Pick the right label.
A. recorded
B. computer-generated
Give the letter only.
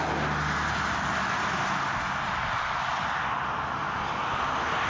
A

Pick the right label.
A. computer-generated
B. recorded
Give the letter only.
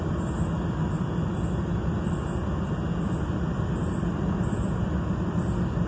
B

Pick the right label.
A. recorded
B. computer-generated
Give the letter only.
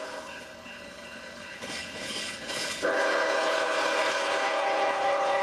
B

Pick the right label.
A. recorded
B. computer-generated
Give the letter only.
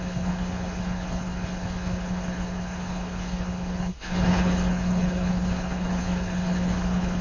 B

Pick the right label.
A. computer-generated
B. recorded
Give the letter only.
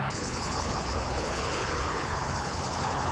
A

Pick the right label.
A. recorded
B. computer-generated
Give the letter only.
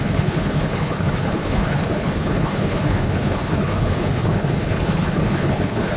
B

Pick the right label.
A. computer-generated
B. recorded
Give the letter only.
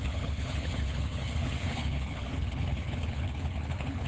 A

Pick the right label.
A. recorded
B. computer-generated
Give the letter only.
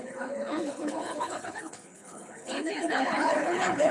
B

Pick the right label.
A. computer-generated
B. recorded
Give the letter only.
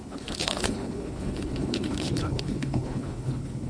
A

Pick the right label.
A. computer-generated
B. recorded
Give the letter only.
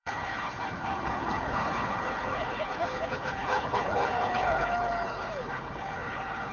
A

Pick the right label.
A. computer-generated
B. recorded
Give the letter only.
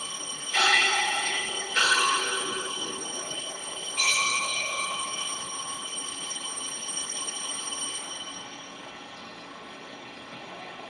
A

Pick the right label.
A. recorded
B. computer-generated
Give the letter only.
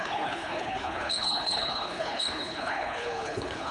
B